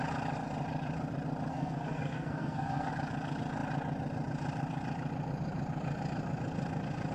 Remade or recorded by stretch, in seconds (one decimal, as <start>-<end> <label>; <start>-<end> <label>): 0.0-1.5 recorded; 1.5-2.9 remade; 2.9-7.1 recorded